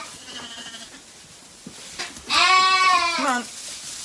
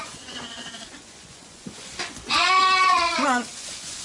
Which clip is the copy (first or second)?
second